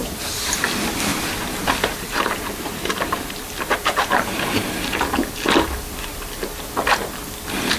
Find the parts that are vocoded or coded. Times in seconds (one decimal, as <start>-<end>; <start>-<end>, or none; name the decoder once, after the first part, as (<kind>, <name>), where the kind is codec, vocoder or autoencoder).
0.0-0.6 (vocoder, BigVGAN v2); 1.1-5.0